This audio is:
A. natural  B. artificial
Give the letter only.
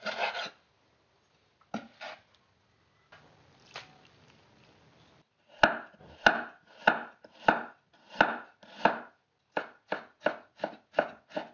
A